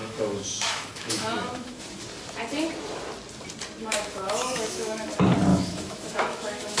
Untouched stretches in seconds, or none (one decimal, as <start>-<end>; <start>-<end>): 1.8-3.8; 5.1-5.5